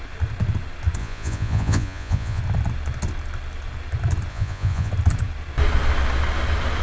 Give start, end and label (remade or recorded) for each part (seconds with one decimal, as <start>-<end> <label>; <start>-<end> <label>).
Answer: 0.0-1.0 recorded; 1.0-2.4 remade; 2.4-4.3 recorded; 4.3-4.9 remade; 4.9-6.8 recorded